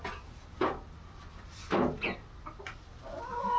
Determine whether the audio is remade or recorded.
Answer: recorded